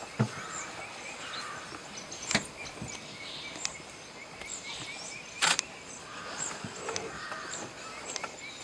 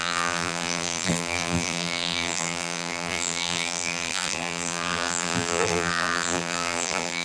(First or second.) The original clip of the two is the first